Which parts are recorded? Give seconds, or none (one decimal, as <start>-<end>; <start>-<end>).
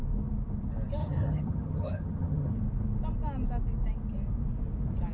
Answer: 0.0-1.0; 2.5-5.1